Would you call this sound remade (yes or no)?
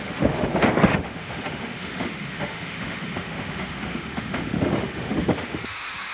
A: yes